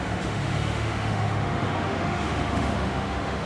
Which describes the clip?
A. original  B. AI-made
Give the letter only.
B